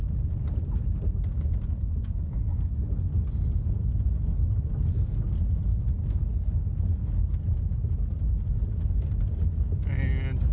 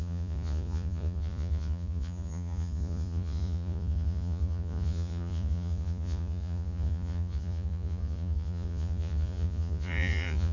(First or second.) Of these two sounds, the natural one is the first